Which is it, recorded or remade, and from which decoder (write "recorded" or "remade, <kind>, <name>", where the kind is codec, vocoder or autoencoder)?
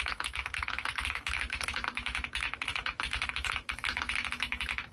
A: remade, autoencoder, DAC-VAE